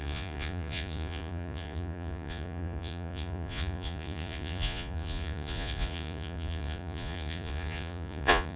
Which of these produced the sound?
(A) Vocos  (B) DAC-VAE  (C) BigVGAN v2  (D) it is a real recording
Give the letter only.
A